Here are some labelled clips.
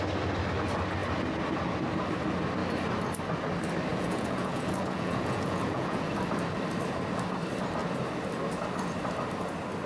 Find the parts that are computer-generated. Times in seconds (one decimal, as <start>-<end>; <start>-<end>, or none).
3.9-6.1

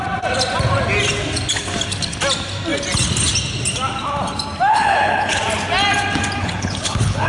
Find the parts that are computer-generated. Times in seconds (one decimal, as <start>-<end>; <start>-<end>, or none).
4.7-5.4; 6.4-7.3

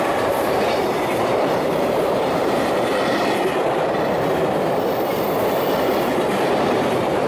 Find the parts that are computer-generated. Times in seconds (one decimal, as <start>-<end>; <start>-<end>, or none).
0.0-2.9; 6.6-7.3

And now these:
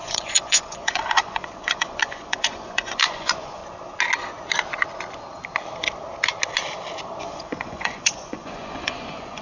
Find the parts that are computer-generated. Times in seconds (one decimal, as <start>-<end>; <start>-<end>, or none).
0.0-3.6; 7.2-9.4

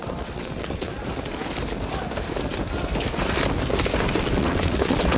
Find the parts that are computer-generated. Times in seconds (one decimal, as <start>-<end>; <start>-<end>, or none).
0.0-0.9; 4.0-5.2